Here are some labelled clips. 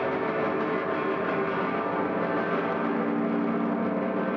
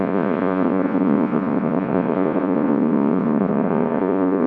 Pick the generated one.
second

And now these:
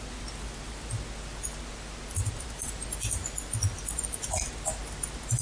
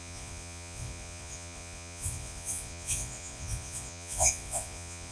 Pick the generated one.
second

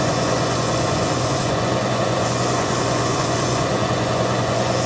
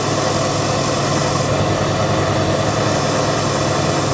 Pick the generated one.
first